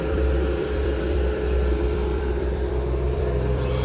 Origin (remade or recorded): remade